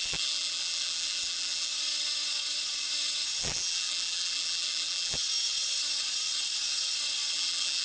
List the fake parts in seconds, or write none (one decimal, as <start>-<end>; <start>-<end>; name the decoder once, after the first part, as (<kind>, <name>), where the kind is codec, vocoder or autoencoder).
0.0-1.7 (vocoder, BigVGAN v2); 3.4-5.2; 7.3-7.8